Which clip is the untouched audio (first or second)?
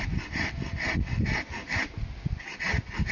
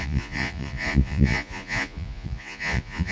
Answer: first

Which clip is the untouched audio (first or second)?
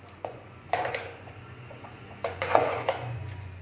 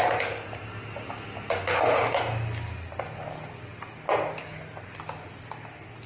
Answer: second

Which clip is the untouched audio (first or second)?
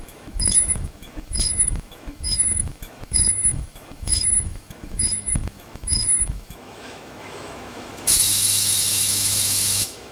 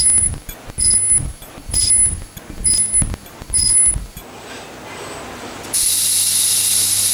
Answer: second